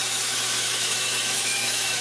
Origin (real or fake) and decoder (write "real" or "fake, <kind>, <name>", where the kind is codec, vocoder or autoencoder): fake, autoencoder, DAC-VAE